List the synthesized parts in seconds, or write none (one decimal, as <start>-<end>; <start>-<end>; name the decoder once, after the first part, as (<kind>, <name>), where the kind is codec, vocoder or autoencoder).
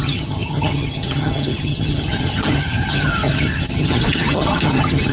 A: 0.0-5.1 (vocoder, HiFi-GAN)